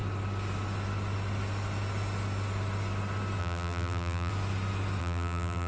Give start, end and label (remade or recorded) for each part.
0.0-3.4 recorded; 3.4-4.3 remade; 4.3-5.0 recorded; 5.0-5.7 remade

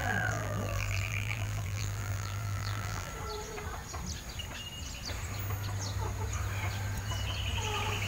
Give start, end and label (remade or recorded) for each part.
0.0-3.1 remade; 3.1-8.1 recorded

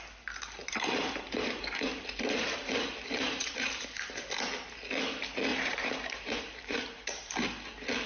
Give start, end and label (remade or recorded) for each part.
0.0-0.6 recorded; 0.6-3.8 remade; 3.8-5.5 recorded; 5.5-7.3 remade; 7.3-8.1 recorded

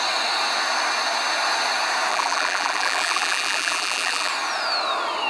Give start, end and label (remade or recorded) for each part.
0.0-2.1 recorded; 2.1-4.3 remade; 4.3-5.3 recorded